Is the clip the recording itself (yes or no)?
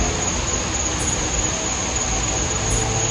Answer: yes